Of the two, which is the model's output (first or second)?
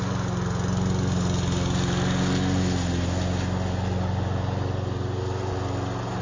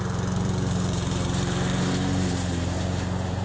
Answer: second